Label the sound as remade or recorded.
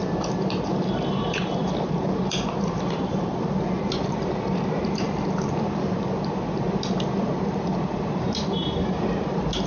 remade